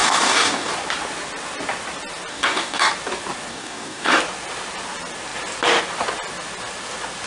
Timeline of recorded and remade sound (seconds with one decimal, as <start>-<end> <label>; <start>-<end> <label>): 0.0-0.7 remade; 0.7-2.3 recorded; 2.3-2.9 remade; 2.9-3.5 recorded; 3.5-4.2 remade; 4.2-7.3 recorded